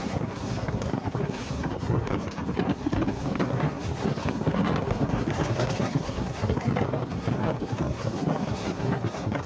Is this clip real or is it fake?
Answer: fake